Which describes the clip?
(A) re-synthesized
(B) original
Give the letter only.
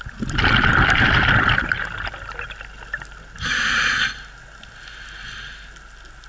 B